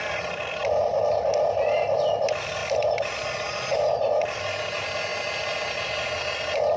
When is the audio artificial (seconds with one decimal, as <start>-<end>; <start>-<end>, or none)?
0.6-1.1; 2.6-4.4